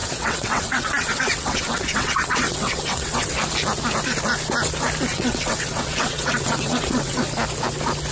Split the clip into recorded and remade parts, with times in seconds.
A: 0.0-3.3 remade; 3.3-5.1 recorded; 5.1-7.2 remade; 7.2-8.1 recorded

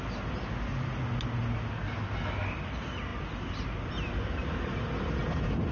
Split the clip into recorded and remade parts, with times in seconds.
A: 0.0-5.7 recorded

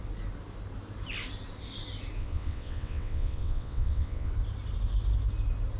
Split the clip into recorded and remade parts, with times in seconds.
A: 0.0-2.2 recorded; 2.2-4.3 remade; 4.3-5.8 recorded